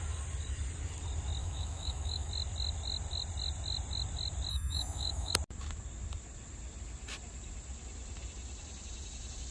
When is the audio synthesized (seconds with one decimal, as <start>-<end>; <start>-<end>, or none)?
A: 1.4-2.3; 4.5-5.3